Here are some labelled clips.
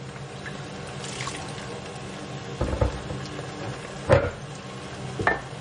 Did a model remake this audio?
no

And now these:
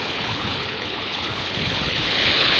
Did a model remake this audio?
yes